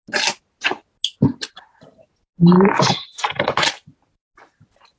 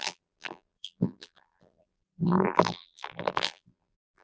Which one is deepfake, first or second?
second